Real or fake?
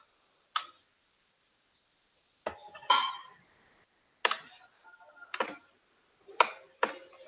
real